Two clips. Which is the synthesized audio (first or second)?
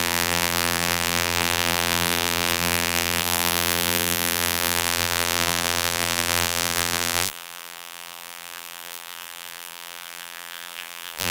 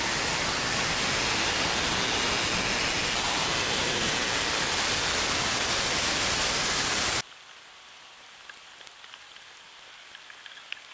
first